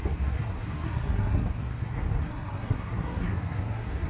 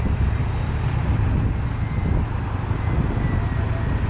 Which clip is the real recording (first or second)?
second